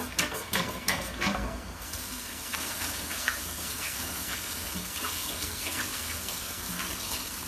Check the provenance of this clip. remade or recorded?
remade